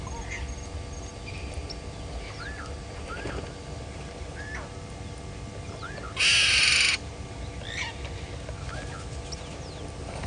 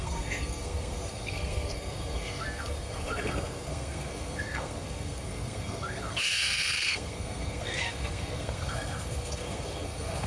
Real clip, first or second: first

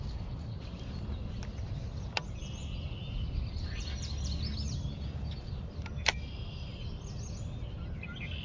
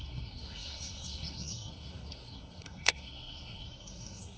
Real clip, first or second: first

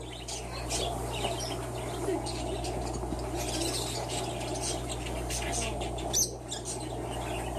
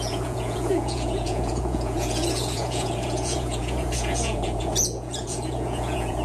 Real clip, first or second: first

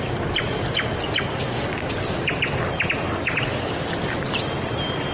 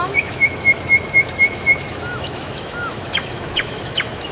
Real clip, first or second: first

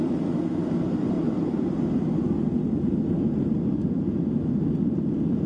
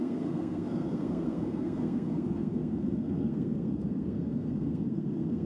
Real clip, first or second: first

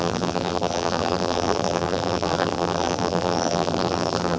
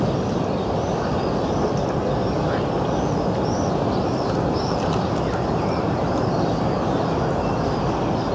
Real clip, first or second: second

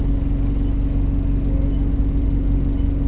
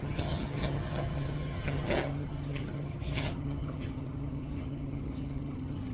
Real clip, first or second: first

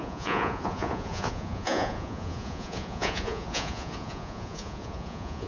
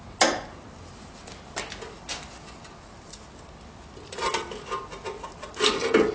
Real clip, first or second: second